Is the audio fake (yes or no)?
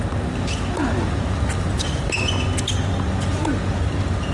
no